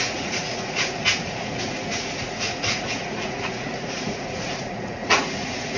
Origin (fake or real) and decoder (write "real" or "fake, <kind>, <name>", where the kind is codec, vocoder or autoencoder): fake, vocoder, Vocos